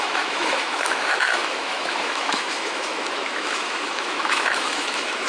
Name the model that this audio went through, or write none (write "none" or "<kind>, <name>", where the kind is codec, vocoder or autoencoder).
autoencoder, DAC-VAE